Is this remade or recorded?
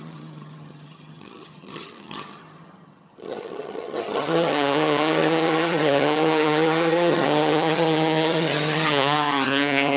remade